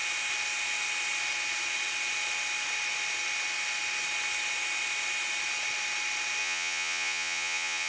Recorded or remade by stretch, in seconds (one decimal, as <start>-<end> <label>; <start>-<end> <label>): 0.0-6.4 recorded; 6.4-7.9 remade